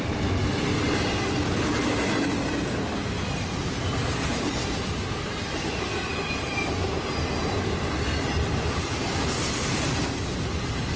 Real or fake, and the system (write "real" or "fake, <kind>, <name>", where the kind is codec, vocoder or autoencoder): real